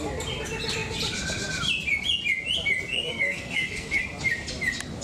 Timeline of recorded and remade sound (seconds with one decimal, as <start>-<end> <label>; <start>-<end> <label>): 0.0-2.9 recorded; 2.9-4.0 remade; 4.0-5.0 recorded